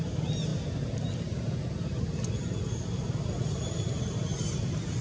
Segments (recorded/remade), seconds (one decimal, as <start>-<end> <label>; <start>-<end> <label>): 0.0-5.0 recorded

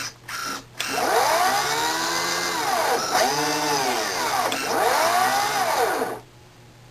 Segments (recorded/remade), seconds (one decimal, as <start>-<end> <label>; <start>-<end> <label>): 0.0-6.9 recorded